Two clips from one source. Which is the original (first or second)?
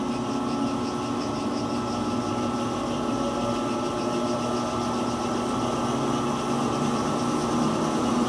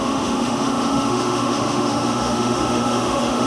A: first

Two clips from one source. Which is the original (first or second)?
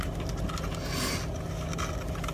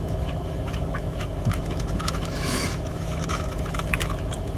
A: first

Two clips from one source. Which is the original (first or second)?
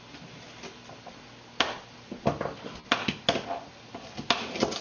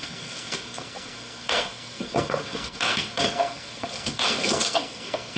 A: first